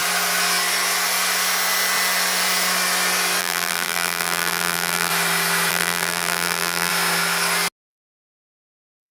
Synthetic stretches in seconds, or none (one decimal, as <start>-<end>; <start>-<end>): 3.4-5.1; 5.7-6.9; 7.9-9.1